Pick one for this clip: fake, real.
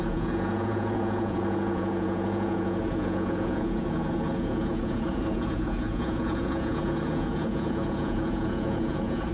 fake